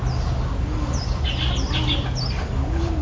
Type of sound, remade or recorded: recorded